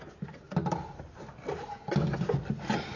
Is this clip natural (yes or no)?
yes